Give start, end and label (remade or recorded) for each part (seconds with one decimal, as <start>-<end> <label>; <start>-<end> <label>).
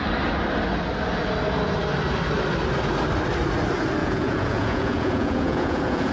0.0-4.0 recorded; 4.0-6.1 remade